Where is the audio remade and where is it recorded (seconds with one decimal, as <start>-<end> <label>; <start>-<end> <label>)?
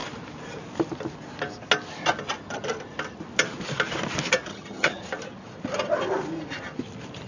0.0-4.5 recorded; 4.5-5.0 remade; 5.0-7.3 recorded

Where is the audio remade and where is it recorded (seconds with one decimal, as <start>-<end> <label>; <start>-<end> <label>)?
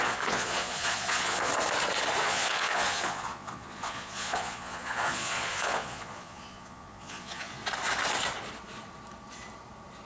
0.0-1.5 remade; 1.5-2.2 recorded; 2.2-7.6 remade; 7.6-10.1 recorded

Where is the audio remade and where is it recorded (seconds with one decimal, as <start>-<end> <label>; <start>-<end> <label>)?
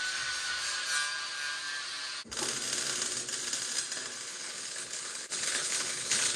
0.0-4.3 recorded; 4.3-6.4 remade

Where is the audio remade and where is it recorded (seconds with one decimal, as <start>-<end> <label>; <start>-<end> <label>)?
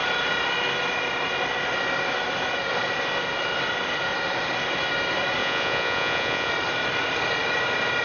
0.0-5.4 recorded; 5.4-6.5 remade; 6.5-8.0 recorded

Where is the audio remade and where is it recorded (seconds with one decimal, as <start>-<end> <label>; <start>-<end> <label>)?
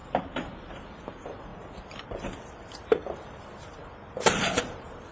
0.0-5.1 recorded